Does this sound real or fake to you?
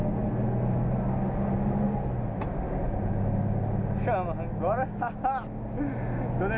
real